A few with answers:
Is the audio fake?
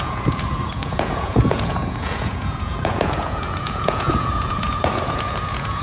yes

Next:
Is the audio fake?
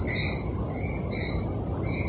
no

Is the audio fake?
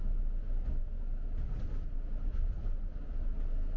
no